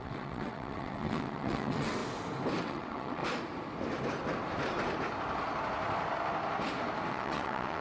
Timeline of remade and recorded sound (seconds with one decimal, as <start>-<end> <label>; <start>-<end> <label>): 0.0-2.0 remade; 2.0-2.6 recorded; 2.6-3.2 remade; 3.2-7.1 recorded; 7.1-7.8 remade